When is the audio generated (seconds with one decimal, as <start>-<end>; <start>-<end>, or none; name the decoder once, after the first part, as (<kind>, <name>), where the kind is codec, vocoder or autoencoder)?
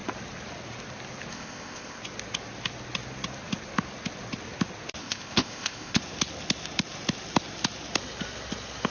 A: 1.3-2.0 (codec, ZipCodec); 5.0-6.0